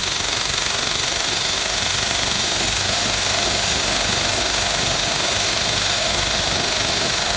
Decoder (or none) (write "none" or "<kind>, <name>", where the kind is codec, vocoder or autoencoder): autoencoder, DAC-VAE